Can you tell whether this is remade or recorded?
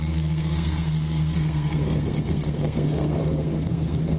remade